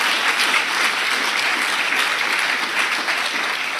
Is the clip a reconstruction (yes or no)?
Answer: no